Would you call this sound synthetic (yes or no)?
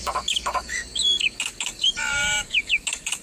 yes